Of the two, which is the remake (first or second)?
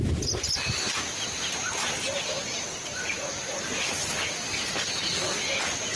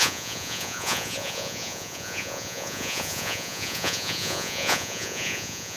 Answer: second